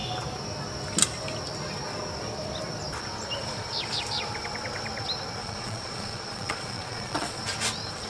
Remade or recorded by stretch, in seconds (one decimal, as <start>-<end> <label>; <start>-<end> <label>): 0.0-5.4 recorded; 5.4-7.4 remade; 7.4-8.1 recorded